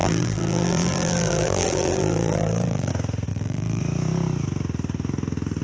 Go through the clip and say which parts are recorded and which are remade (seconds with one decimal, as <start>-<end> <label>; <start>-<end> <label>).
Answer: 0.0-2.9 remade; 2.9-3.3 recorded; 3.3-3.8 remade; 3.8-5.6 recorded